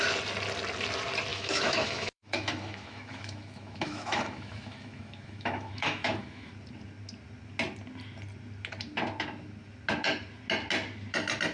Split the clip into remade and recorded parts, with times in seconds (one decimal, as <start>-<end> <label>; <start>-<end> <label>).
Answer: 0.0-1.3 recorded; 1.3-6.5 remade; 6.5-11.5 recorded